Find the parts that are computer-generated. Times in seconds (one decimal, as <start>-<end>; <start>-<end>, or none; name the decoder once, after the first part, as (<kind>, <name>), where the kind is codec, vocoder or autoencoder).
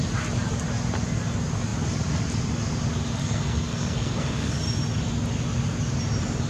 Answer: 3.2-4.6 (codec, SNAC)